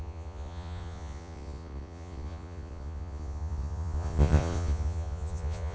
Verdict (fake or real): fake